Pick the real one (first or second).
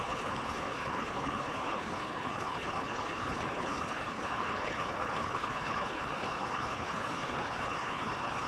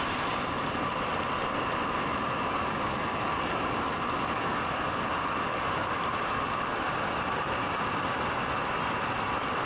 second